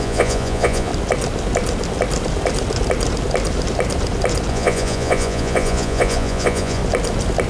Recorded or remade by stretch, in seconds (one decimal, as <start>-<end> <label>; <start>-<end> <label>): 0.0-0.9 remade; 0.9-4.5 recorded; 4.5-6.8 remade; 6.8-7.5 recorded